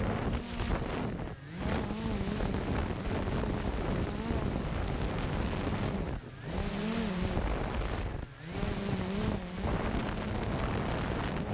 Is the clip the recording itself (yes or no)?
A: yes